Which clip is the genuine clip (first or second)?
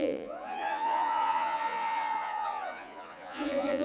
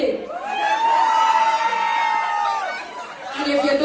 second